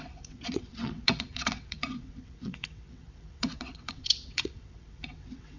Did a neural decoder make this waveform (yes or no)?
yes